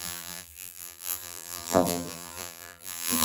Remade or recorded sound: remade